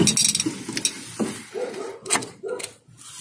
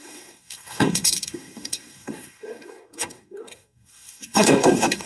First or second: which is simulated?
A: second